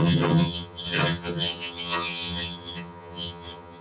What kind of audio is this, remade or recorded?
remade